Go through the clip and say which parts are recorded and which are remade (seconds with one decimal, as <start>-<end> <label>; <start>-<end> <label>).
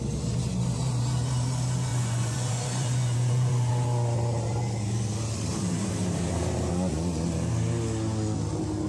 0.0-1.9 recorded; 1.9-3.7 remade; 3.7-8.9 recorded